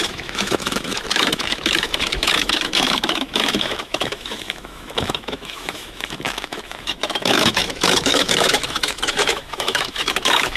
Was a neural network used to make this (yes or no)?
yes